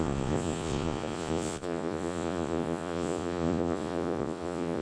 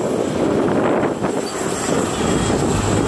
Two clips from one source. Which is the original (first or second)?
second